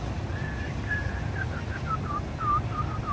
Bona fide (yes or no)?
yes